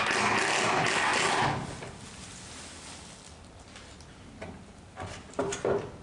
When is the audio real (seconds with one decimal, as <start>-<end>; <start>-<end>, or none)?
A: 0.0-6.0